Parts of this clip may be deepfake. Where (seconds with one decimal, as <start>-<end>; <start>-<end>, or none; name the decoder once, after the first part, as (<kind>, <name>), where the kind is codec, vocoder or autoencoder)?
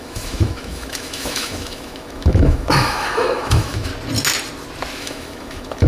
0.0-3.9 (autoencoder, DAC-VAE); 5.0-5.9